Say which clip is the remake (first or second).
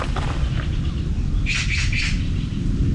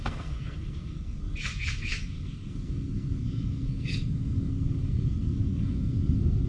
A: second